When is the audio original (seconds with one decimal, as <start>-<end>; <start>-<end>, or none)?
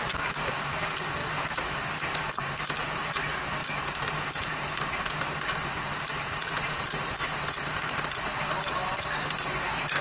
7.2-9.3